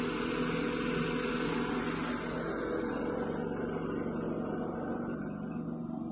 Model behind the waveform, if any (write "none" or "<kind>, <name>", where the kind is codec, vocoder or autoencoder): none